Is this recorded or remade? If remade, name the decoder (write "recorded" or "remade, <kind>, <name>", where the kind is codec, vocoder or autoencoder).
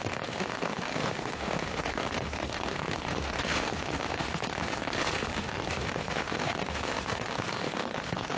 remade, autoencoder, DAC-VAE